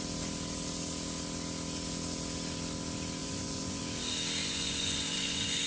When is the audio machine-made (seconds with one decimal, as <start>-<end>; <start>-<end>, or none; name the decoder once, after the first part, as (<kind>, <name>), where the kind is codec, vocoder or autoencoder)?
3.2-3.8 (vocoder, Vocos); 4.4-5.7